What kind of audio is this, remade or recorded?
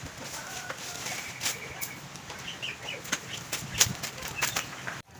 recorded